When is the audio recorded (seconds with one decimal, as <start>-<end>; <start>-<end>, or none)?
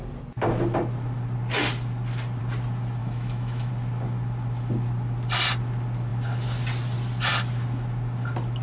0.0-3.0; 3.7-8.6